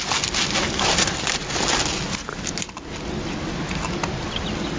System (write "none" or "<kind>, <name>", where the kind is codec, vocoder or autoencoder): none